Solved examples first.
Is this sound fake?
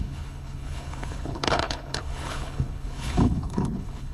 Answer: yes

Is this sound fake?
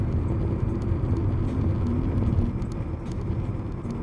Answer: no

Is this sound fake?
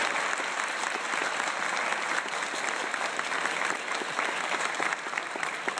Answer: no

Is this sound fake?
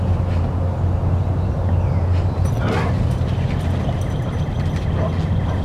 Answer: no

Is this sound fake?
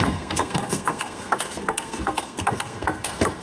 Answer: yes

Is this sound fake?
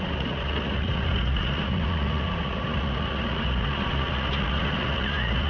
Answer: yes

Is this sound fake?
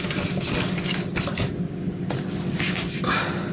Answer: no